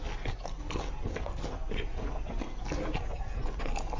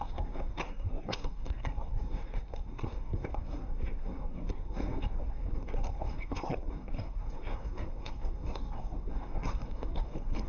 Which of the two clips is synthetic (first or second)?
second